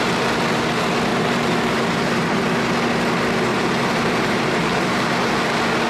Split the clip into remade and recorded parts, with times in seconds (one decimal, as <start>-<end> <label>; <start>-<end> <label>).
0.0-1.1 recorded; 1.1-2.5 remade; 2.5-3.5 recorded; 3.5-5.3 remade; 5.3-5.9 recorded